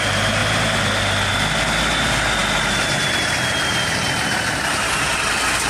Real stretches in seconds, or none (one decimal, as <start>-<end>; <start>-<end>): 0.0-5.7